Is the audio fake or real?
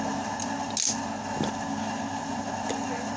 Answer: real